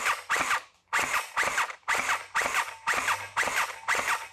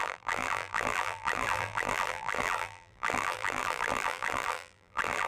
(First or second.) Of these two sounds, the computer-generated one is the second